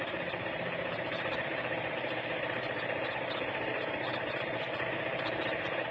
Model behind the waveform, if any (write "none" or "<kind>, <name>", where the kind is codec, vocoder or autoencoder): vocoder, BigVGAN v2